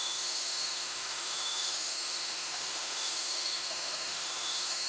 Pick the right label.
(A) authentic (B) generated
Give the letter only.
B